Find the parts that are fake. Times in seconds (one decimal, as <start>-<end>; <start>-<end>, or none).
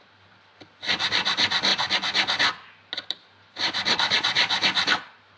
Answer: none